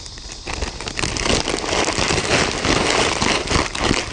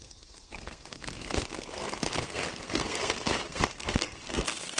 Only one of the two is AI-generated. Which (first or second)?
second